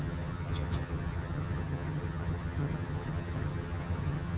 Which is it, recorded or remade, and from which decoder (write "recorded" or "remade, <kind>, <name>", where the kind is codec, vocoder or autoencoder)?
remade, vocoder, HiFi-GAN